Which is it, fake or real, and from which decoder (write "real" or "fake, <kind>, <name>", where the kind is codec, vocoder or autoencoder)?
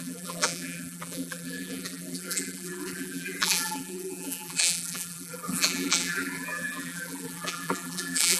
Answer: fake, vocoder, BigVGAN v2